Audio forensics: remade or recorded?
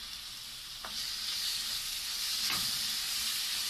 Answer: recorded